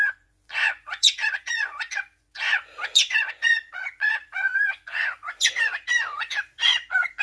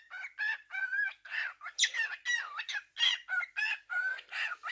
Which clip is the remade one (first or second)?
first